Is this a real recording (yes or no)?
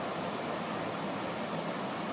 yes